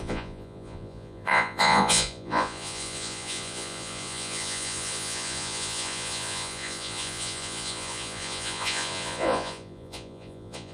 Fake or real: fake